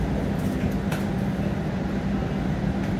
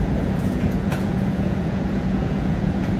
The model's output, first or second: second